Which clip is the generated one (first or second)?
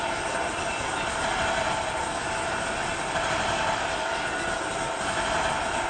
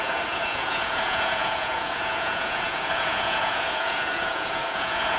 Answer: second